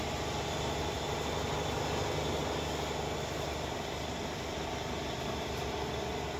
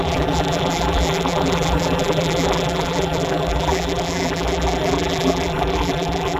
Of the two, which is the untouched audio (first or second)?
first